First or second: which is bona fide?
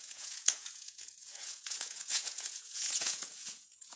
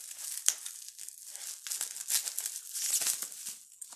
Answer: second